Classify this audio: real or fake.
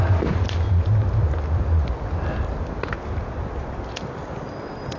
real